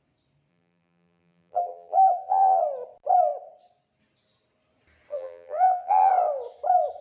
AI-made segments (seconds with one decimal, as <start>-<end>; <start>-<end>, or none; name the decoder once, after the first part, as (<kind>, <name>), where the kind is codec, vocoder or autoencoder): 0.5-2.6 (vocoder, BigVGAN v2); 5.1-6.1